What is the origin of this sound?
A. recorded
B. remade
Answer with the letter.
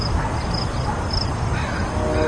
A